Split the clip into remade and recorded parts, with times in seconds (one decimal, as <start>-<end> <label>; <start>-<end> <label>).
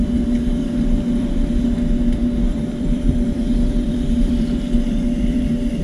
0.0-1.6 remade; 1.6-2.2 recorded; 2.2-5.8 remade